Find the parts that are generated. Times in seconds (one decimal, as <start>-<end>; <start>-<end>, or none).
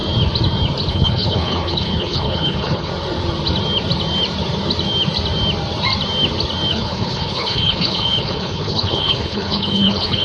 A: 0.9-2.9; 6.7-10.2